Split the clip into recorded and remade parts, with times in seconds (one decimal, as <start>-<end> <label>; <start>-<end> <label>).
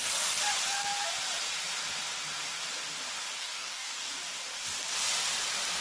0.0-3.4 recorded; 3.4-4.1 remade; 4.1-5.8 recorded